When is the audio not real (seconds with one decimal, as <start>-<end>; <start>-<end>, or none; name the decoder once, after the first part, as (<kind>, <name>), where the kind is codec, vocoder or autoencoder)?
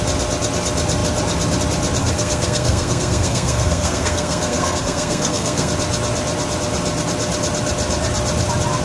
2.0-5.7 (codec, SNAC)